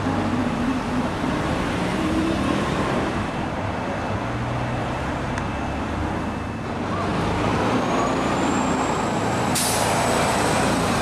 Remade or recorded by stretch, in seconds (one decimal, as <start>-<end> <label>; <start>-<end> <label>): 0.0-0.4 recorded; 0.4-3.3 remade; 3.3-4.8 recorded; 4.8-5.3 remade; 5.3-7.1 recorded; 7.1-11.0 remade